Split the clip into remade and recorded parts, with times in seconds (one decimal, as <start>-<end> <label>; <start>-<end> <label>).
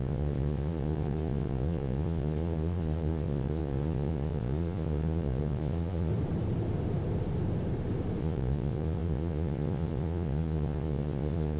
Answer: 0.0-6.1 remade; 6.1-8.2 recorded; 8.2-11.6 remade